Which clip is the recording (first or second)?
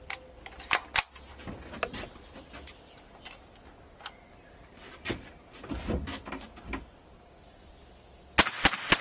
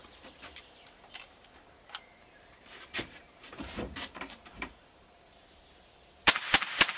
first